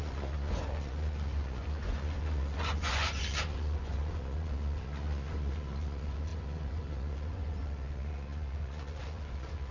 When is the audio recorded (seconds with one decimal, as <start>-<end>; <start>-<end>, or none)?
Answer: none